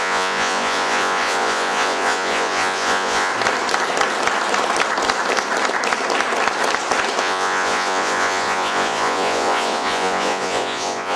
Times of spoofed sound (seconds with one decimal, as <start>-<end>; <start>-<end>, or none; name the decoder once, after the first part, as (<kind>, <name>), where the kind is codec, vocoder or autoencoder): 0.0-3.3 (vocoder, Vocos); 7.2-11.2